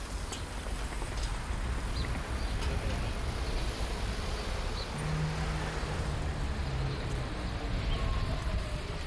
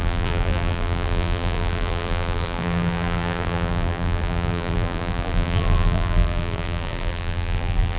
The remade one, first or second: second